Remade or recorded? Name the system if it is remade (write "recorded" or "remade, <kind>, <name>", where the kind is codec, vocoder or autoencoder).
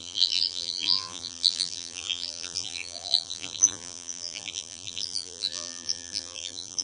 remade, vocoder, BigVGAN v2